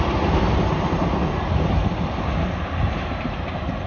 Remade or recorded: recorded